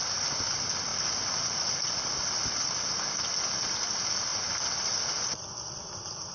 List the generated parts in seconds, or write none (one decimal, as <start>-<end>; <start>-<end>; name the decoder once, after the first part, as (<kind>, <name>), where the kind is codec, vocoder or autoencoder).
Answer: none